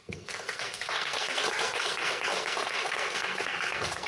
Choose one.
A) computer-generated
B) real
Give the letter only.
A